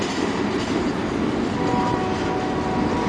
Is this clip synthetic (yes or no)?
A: no